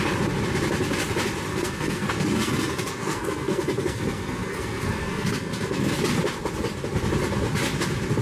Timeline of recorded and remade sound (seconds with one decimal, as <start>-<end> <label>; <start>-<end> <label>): 0.0-1.5 recorded; 1.5-6.0 remade; 6.0-8.2 recorded